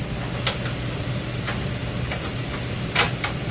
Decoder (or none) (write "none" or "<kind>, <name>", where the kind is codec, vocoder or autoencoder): none